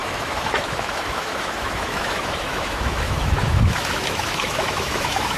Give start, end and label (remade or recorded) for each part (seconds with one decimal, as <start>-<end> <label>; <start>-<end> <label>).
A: 0.0-5.4 remade